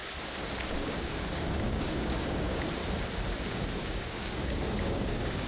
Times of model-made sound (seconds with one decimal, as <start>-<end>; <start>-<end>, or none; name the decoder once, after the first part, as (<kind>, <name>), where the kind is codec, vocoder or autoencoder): 0.8-2.8 (codec, DAC); 3.5-5.5